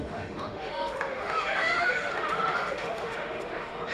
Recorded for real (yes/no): no